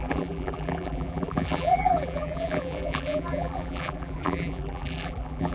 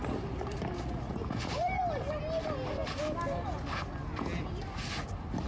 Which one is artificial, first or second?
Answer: first